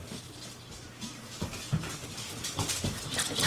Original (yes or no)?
yes